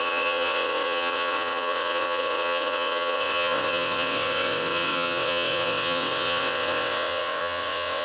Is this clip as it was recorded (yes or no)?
no